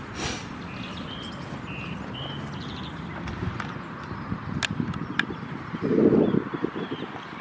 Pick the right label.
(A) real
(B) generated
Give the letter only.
A